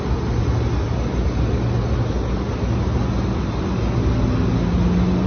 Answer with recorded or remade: recorded